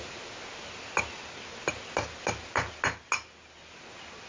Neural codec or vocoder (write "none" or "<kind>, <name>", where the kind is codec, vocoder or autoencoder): none